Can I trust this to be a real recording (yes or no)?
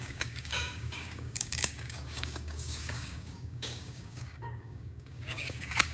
no